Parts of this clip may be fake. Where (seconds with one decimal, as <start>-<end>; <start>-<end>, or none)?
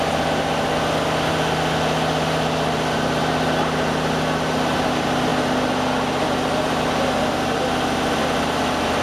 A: none